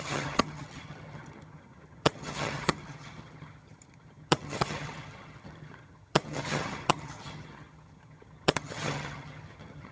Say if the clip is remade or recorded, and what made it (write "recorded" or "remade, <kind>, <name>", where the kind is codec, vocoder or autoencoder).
remade, vocoder, HiFi-GAN